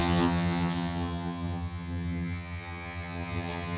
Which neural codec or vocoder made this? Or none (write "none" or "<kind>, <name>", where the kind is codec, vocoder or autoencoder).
vocoder, HiFi-GAN